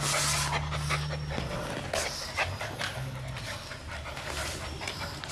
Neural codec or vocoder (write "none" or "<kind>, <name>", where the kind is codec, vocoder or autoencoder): none